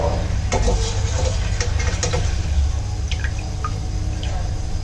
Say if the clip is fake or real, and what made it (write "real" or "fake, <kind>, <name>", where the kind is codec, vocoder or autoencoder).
real